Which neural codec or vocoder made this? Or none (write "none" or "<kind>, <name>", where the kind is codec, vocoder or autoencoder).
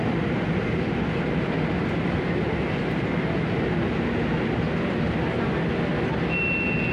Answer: none